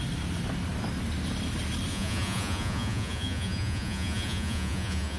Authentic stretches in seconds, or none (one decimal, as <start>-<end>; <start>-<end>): 0.0-1.9

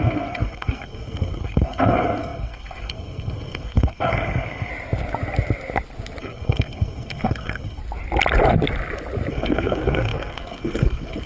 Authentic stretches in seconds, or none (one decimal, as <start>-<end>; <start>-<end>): 4.7-6.2; 7.8-9.3